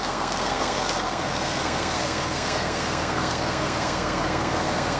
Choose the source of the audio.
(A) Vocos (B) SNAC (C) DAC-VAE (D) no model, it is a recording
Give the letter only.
B